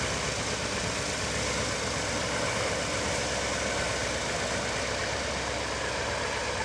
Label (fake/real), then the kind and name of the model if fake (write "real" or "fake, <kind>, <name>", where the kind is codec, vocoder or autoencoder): real